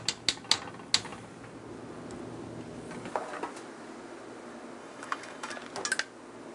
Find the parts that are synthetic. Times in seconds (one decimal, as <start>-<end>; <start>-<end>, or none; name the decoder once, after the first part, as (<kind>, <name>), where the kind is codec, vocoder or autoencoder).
4.8-5.5 (autoencoder, DAC-VAE)